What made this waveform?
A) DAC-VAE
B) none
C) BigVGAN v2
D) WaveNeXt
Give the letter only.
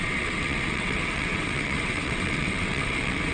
D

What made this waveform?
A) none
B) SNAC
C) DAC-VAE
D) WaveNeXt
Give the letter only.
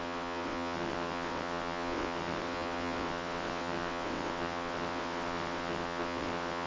D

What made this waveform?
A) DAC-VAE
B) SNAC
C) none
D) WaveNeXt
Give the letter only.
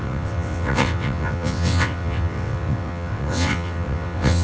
D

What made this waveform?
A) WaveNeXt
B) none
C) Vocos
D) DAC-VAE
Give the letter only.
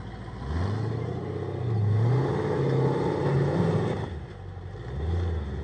B